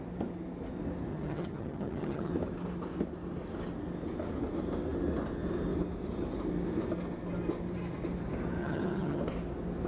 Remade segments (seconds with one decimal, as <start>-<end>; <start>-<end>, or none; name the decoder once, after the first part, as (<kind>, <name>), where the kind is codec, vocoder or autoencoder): 1.1-2.3 (vocoder, HiFi-GAN); 8.6-9.2